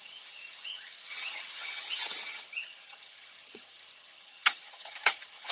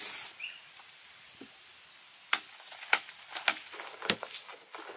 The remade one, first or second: first